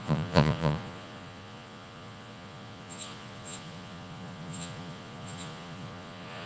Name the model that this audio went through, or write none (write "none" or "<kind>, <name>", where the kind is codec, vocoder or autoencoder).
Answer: vocoder, Vocos